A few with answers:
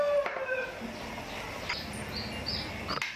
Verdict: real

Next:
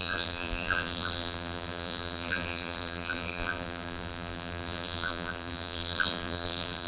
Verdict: fake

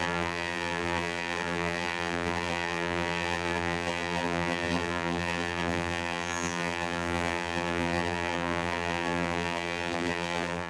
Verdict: fake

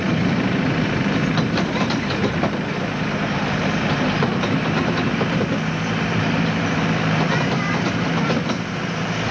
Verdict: fake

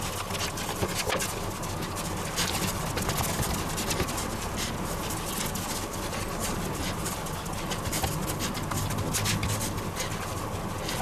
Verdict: real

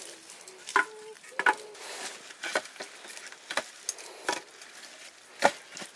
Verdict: real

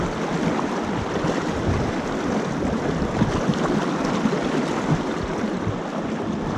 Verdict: real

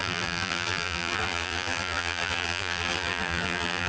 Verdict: fake